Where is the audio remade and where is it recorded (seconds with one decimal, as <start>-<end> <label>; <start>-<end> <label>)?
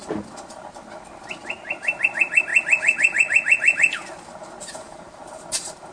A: 0.0-2.0 recorded; 2.0-2.5 remade; 2.5-4.6 recorded; 4.6-5.9 remade